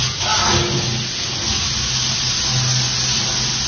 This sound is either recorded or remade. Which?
recorded